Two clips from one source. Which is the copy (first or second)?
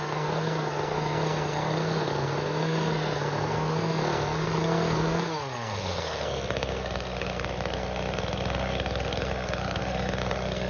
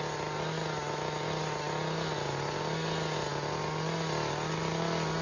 first